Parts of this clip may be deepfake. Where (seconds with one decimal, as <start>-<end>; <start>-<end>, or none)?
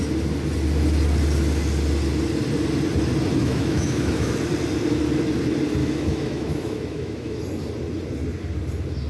3.4-4.3; 5.8-7.4